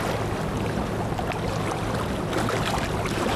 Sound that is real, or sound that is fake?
real